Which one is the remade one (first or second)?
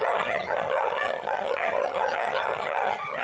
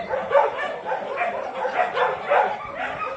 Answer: first